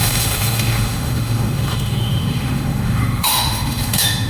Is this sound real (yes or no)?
no